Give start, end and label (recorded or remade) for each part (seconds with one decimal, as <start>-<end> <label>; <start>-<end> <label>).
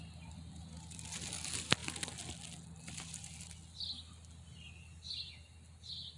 0.0-6.2 recorded